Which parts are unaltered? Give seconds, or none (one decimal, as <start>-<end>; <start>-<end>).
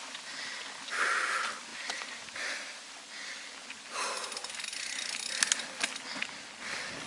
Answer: 0.0-1.7; 3.4-7.1